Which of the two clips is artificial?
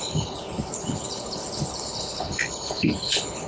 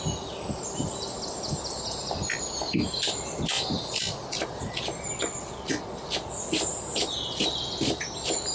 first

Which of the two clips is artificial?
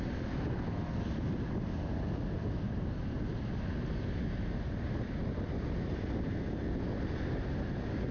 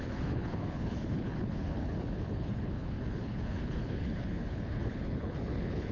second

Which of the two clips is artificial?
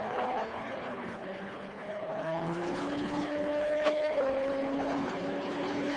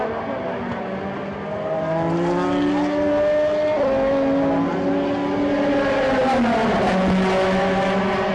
first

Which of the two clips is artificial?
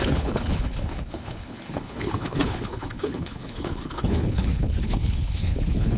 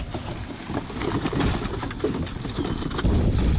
first